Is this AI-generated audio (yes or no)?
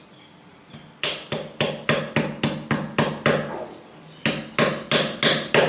no